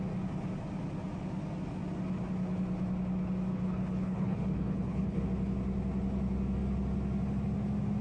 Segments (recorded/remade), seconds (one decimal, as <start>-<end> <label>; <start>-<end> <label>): 0.0-3.5 recorded; 3.5-5.2 remade; 5.2-8.0 recorded